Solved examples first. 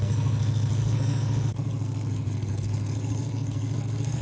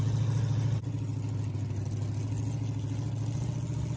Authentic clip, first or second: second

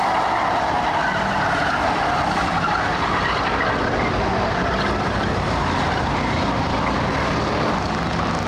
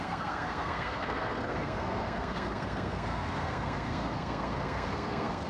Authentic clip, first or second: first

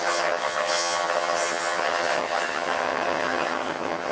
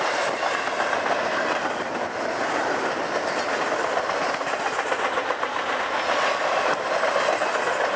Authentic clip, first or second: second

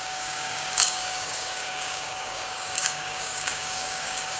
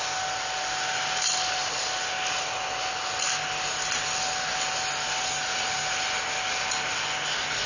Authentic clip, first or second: second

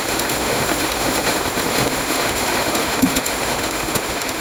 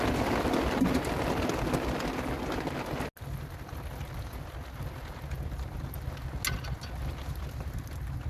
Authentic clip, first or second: second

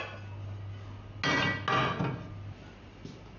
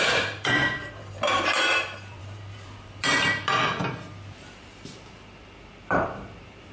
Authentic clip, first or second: first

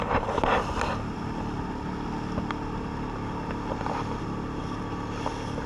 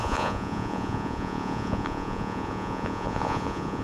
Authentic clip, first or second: first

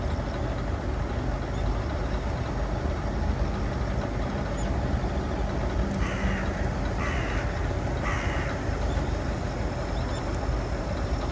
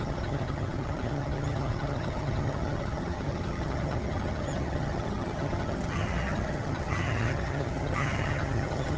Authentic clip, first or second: first